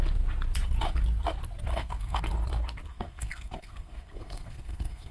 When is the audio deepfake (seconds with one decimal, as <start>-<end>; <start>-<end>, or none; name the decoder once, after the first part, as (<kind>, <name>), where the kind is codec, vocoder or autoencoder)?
1.7-2.2 (codec, SNAC); 2.9-5.1